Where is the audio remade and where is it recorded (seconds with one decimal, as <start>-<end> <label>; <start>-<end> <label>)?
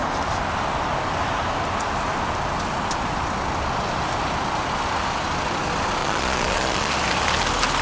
0.0-6.0 recorded; 6.0-6.9 remade; 6.9-7.8 recorded